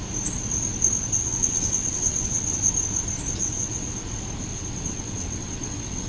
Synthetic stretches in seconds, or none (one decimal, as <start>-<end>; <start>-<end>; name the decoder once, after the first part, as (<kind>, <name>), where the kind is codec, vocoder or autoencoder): 1.2-2.6 (vocoder, WaveNeXt); 3.4-4.0; 4.5-6.1